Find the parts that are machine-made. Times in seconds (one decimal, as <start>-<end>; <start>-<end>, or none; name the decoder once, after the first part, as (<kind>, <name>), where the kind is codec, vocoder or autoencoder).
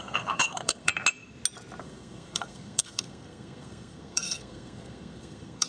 0.0-0.9 (codec, SNAC); 1.8-5.7